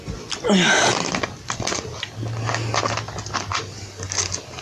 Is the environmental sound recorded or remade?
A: recorded